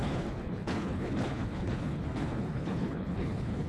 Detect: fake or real fake